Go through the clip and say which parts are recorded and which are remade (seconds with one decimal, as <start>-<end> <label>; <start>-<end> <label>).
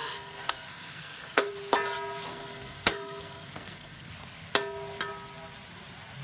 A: 0.0-1.5 remade; 1.5-2.3 recorded; 2.3-4.1 remade; 4.1-6.2 recorded